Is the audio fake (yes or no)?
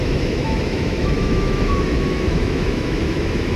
yes